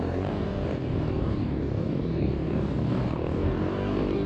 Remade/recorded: remade